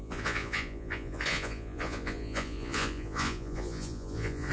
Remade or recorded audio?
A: remade